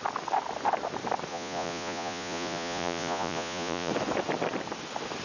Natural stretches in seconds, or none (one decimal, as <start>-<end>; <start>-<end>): 0.0-1.3; 3.9-5.2